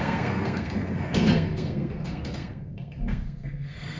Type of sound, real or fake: fake